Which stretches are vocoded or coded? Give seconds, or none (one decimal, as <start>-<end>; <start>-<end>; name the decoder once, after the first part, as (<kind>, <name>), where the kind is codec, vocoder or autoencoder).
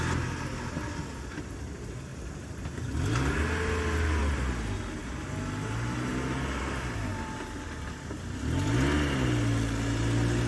none